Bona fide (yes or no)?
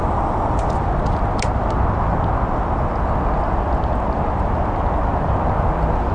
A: yes